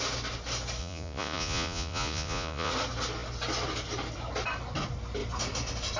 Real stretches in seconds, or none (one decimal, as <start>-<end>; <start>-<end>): 0.0-0.8; 2.7-6.0